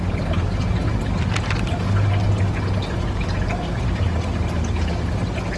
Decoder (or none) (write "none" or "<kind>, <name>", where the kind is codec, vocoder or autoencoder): none